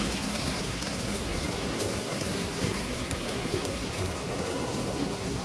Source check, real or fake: fake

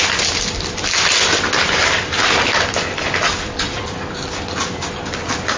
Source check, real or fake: real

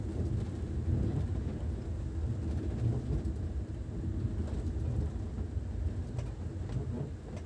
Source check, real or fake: real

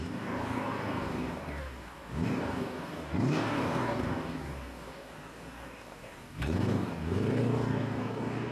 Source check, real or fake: fake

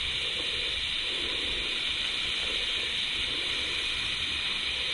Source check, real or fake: real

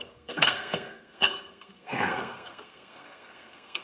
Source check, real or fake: fake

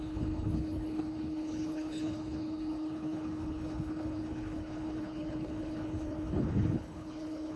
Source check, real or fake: fake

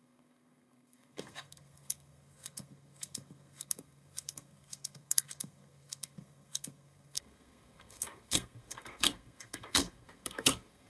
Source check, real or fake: fake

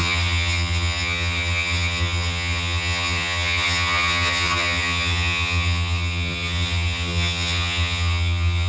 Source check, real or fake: fake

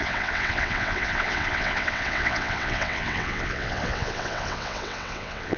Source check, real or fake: fake